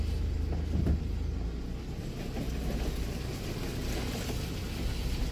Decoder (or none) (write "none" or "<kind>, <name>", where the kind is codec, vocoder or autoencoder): none